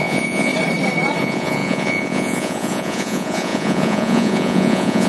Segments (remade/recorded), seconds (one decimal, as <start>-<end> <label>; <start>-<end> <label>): 0.0-0.5 remade; 0.5-1.2 recorded; 1.2-5.1 remade